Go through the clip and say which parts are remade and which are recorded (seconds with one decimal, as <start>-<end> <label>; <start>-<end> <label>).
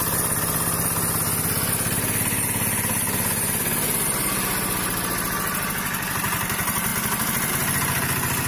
0.0-8.5 recorded